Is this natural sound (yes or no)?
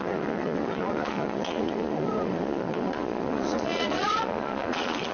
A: no